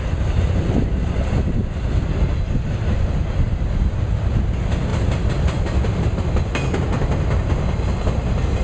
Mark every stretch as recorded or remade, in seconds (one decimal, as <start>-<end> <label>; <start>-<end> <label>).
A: 0.0-8.6 recorded